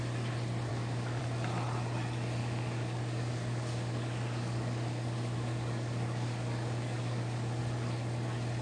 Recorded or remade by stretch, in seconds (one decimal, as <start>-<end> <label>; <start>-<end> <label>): 0.0-0.7 recorded; 0.7-1.2 remade; 1.2-2.4 recorded; 2.4-7.6 remade; 7.6-8.6 recorded